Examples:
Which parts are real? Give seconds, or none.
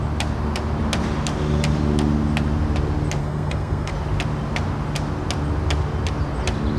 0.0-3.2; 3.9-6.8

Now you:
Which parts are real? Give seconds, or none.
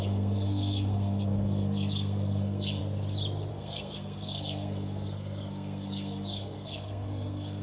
2.8-3.5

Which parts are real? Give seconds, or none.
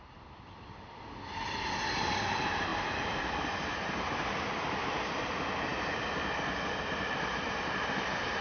0.0-8.4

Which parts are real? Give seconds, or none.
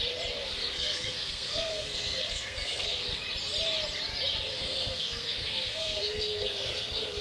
0.0-0.4; 3.2-4.5